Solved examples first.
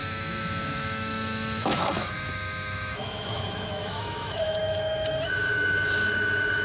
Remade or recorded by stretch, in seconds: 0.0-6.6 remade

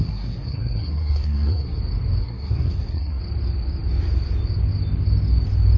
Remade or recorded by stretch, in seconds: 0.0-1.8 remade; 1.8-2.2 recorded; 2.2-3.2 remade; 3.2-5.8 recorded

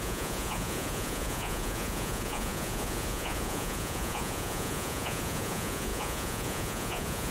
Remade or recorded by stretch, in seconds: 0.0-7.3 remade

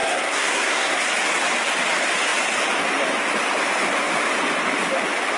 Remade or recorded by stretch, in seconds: 0.0-1.0 remade; 1.0-5.4 recorded

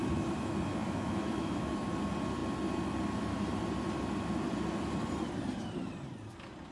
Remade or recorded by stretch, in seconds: 0.0-0.8 recorded; 0.8-1.7 remade; 1.7-6.7 recorded

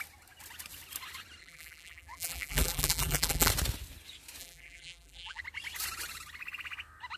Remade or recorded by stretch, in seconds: 0.0-1.4 recorded; 1.4-3.5 remade; 3.5-4.4 recorded; 4.4-5.4 remade; 5.4-7.2 recorded